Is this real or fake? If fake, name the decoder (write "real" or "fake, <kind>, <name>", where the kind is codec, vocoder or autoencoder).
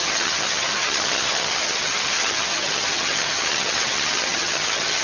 fake, vocoder, HiFi-GAN